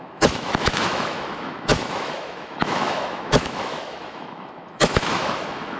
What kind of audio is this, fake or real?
fake